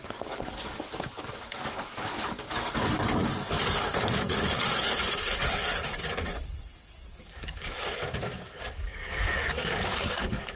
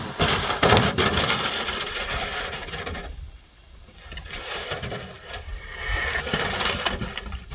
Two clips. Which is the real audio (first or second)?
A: second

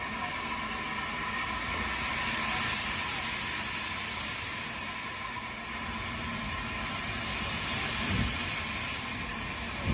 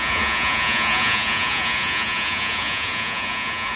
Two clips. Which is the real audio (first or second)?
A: first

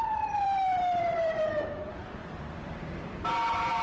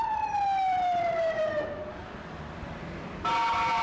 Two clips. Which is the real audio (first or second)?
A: second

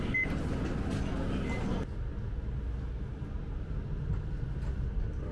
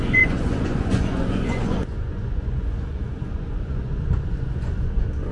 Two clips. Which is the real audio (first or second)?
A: first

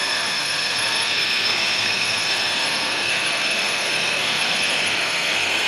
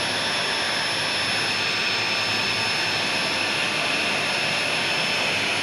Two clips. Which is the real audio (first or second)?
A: second